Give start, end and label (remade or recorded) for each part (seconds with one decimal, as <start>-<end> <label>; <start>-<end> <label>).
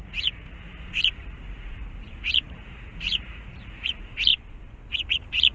0.0-4.3 remade; 4.3-4.9 recorded; 4.9-5.5 remade